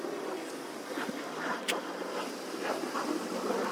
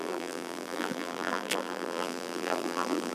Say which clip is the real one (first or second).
first